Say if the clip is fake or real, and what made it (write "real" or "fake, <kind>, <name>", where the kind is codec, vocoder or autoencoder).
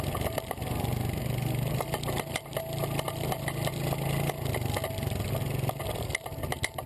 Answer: real